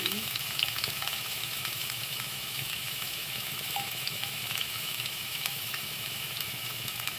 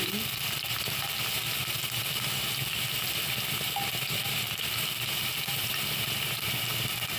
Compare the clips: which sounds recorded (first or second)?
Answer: second